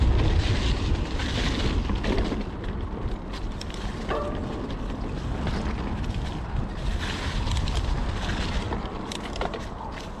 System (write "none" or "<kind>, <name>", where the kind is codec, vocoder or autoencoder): none